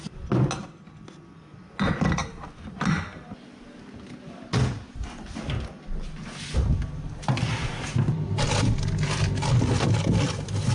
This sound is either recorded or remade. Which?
recorded